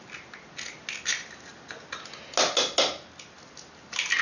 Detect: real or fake real